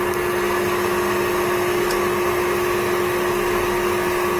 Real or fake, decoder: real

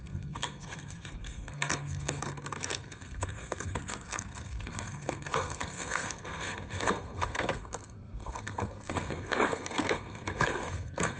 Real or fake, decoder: fake, codec, SNAC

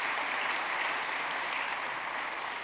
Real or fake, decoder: real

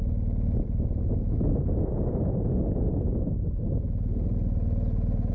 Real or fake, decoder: real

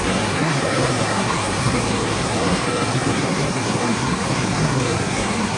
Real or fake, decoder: fake, codec, SNAC